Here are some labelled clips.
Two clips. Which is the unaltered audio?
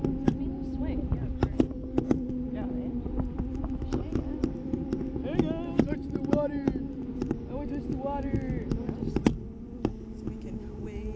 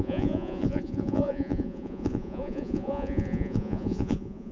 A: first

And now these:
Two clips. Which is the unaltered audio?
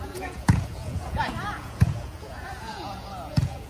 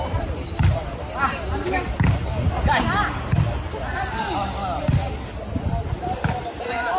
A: second